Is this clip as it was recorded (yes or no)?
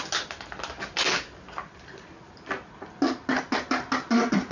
yes